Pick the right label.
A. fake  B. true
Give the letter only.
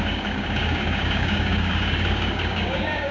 A